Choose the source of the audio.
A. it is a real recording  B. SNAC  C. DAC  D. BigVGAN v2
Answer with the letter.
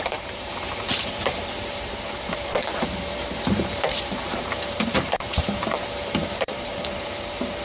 D